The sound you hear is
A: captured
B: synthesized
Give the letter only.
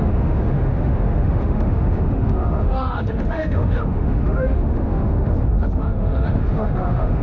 B